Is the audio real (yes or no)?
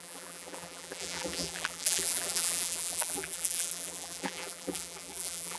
no